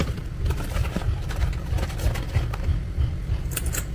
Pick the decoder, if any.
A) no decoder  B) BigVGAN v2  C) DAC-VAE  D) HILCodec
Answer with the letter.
B